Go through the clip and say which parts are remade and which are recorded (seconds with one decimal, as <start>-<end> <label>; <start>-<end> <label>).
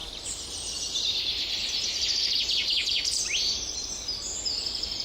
0.0-5.0 recorded